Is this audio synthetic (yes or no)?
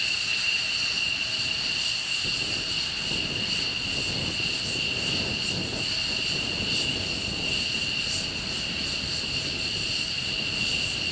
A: no